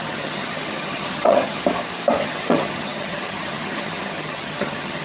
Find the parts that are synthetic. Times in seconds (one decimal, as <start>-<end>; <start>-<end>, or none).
0.0-1.6; 2.2-5.0